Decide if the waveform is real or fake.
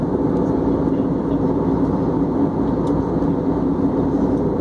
real